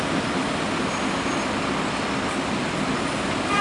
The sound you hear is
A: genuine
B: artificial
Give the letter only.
A